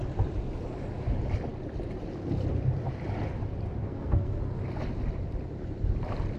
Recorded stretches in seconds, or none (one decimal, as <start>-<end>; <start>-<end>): 0.0-3.8; 4.4-6.4